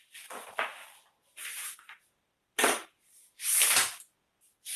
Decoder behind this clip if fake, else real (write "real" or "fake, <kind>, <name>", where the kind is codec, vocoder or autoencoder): real